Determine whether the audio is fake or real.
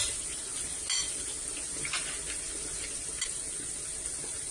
real